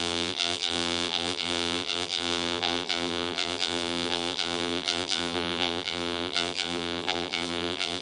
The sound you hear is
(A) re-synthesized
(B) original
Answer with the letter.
A